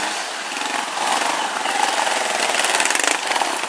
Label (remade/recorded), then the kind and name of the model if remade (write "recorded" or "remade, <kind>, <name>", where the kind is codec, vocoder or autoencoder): recorded